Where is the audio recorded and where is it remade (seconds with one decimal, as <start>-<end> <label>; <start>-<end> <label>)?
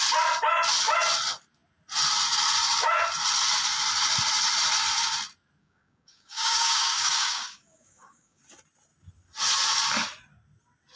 0.0-5.6 recorded; 5.6-8.4 remade; 8.4-11.0 recorded